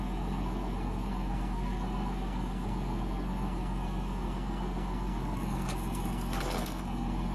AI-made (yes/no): yes